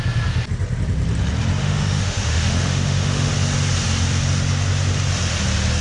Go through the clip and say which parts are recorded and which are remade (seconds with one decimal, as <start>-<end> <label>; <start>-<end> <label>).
0.0-1.6 recorded; 1.6-3.3 remade; 3.3-5.8 recorded